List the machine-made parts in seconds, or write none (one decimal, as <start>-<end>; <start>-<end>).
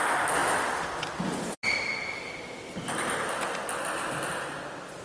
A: none